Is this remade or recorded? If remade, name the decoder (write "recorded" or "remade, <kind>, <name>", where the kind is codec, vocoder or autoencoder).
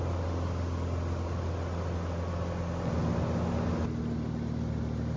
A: recorded